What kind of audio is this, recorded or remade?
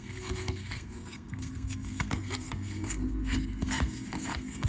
remade